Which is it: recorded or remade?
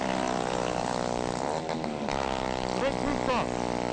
recorded